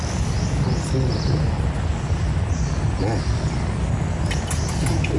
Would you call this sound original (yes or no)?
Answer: yes